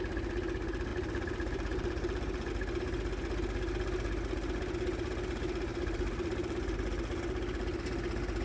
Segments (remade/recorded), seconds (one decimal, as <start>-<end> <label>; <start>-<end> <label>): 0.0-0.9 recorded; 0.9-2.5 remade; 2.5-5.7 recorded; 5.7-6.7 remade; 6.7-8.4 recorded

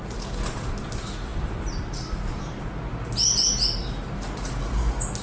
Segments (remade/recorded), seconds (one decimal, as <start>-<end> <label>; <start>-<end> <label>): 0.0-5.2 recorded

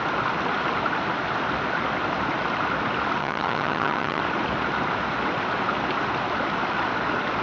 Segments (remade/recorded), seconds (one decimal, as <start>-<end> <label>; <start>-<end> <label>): 0.0-3.2 recorded; 3.2-4.2 remade; 4.2-7.4 recorded